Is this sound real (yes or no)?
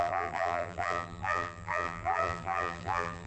no